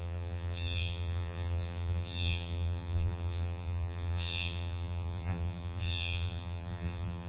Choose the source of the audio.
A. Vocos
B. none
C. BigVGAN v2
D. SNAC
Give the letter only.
C